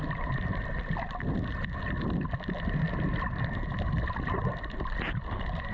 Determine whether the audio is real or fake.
real